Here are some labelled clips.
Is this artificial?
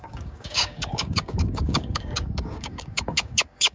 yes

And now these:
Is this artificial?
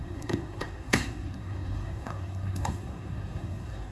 yes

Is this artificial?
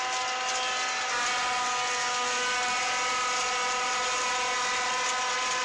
no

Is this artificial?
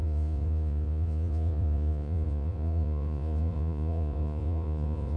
yes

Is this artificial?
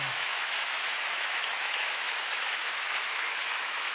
yes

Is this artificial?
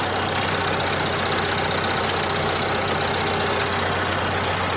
no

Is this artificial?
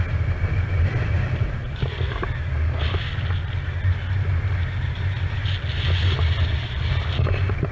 no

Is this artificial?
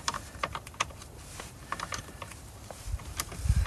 yes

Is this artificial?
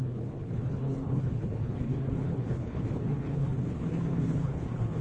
yes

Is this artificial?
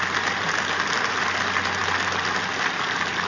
no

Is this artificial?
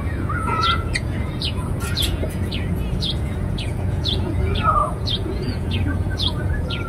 yes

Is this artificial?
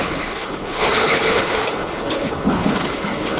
yes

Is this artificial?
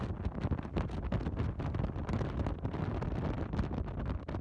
no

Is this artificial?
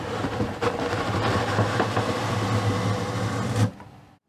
no